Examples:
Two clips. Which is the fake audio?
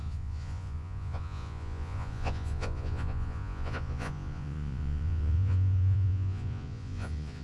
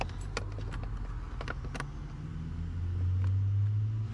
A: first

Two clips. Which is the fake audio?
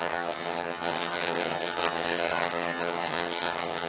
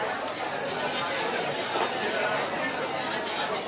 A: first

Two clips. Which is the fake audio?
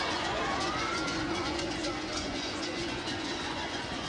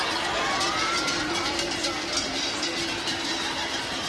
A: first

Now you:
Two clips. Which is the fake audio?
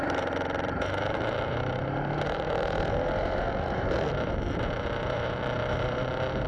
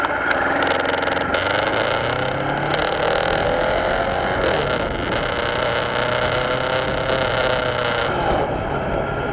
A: first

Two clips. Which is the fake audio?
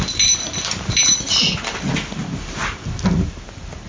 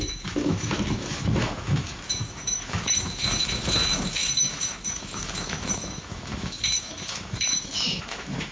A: second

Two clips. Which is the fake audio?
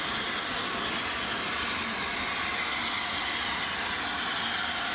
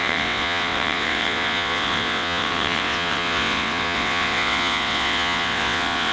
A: second